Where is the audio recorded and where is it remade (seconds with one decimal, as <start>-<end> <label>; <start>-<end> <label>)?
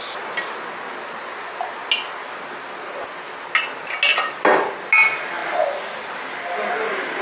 0.0-7.2 recorded